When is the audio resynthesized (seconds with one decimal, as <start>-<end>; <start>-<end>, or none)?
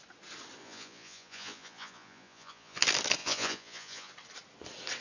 0.6-2.8; 3.2-4.1